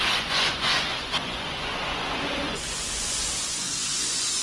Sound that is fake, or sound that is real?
fake